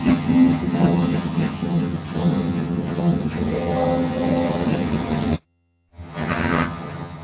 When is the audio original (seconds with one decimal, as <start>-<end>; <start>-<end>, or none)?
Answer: none